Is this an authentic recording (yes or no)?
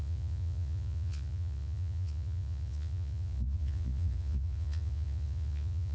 no